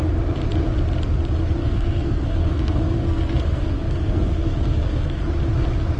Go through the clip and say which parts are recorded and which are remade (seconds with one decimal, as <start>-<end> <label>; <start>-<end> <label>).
0.0-1.6 recorded; 1.6-5.2 remade; 5.2-6.0 recorded